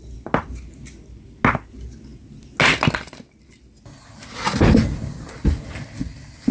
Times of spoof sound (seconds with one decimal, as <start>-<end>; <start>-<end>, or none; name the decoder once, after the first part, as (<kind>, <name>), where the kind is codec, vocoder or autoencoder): none